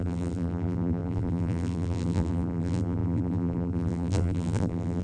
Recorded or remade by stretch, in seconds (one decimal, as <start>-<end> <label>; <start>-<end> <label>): 0.0-5.0 remade